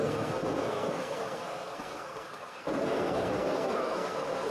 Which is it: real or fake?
fake